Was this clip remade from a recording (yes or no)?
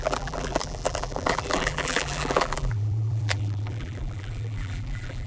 yes